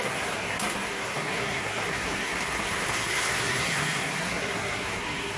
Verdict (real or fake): fake